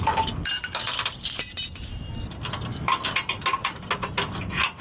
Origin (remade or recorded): recorded